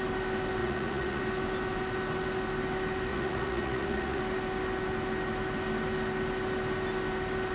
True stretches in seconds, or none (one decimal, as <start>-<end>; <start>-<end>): 0.0-0.6; 1.2-3.1; 4.2-7.5